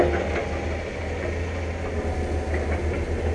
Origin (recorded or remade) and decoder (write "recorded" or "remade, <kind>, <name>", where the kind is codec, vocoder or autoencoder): recorded